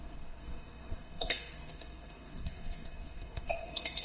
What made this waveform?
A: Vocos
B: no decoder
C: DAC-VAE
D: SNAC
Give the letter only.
D